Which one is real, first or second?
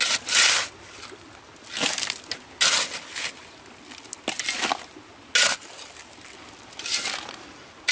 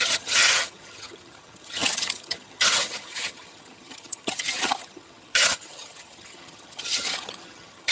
first